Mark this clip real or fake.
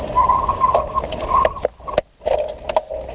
real